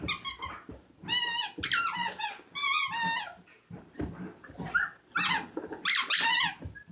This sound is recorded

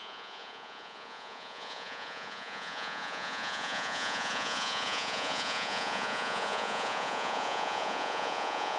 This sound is remade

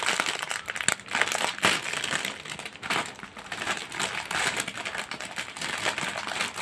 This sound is recorded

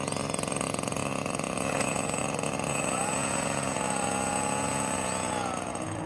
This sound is remade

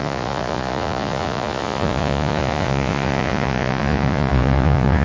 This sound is remade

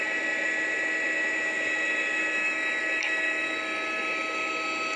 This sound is recorded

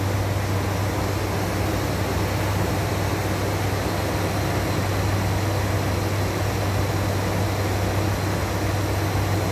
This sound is recorded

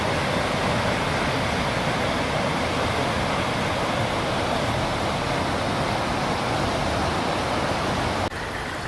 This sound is recorded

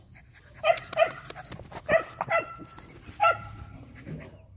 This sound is recorded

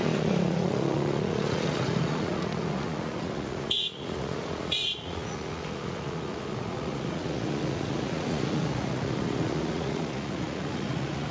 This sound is remade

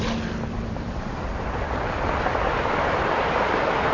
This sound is recorded